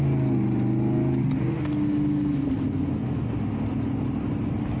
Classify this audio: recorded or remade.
recorded